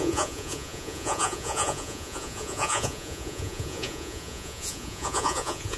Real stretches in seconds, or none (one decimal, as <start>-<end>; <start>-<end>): none